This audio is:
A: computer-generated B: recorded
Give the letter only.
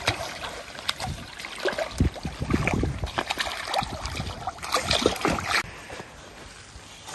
B